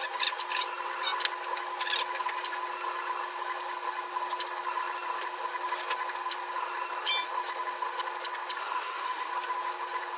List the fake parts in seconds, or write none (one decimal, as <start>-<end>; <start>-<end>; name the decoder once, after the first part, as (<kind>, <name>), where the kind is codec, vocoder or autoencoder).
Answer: 8.6-9.3 (autoencoder, DAC-VAE)